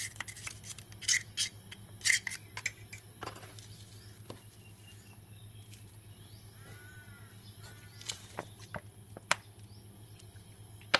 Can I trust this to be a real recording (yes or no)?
yes